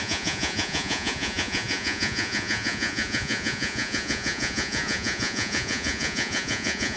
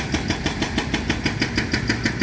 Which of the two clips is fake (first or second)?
first